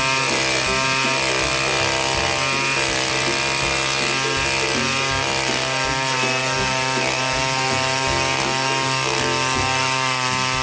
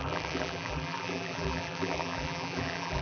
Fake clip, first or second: second